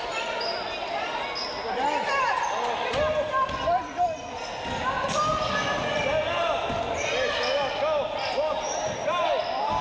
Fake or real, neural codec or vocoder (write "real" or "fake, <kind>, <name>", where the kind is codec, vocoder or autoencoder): real